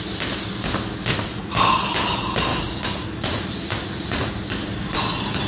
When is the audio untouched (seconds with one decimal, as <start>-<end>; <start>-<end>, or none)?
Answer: 0.0-1.1; 1.6-2.5; 4.3-5.5